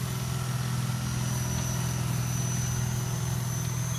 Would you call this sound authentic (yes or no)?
yes